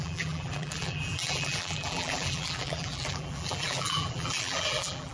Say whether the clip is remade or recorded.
remade